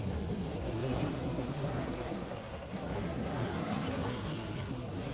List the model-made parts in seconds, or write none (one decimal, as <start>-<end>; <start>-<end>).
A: 0.0-5.1